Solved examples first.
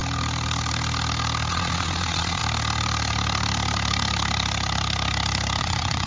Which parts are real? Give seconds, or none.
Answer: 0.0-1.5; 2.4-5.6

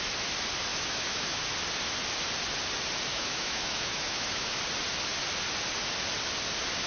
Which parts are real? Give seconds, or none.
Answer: 0.0-0.7; 1.4-3.1; 4.6-6.9

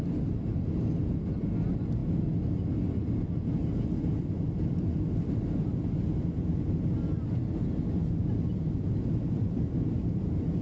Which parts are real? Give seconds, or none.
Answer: 0.0-10.6

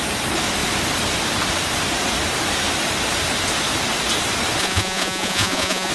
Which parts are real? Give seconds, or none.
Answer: 0.0-4.6